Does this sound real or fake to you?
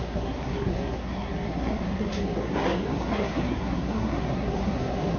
fake